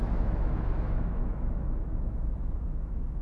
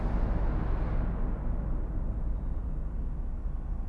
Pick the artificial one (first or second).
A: first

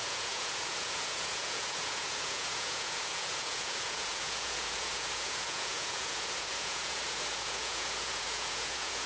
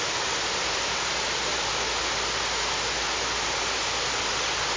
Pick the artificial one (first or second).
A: first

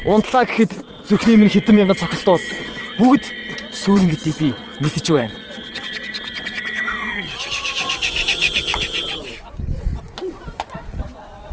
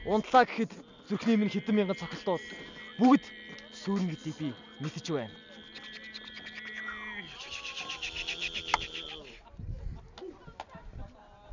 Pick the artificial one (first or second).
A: first